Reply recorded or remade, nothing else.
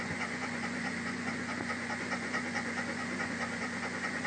remade